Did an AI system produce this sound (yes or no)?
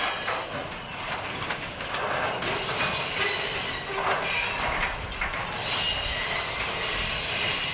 no